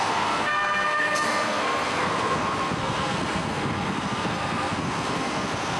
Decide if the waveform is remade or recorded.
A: remade